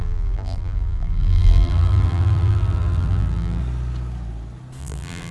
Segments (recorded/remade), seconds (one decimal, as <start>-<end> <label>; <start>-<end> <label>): 0.0-3.6 remade; 3.6-4.8 recorded; 4.8-5.3 remade